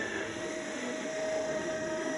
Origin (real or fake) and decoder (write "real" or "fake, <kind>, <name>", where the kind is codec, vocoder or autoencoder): fake, autoencoder, DAC-VAE